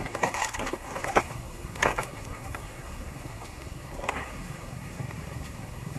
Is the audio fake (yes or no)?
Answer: yes